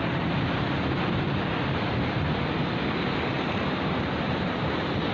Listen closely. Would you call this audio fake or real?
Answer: real